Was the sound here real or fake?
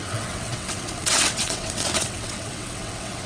fake